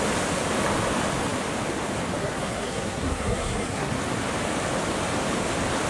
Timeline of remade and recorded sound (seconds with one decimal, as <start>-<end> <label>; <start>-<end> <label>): 0.0-2.2 recorded; 2.2-3.9 remade; 3.9-5.9 recorded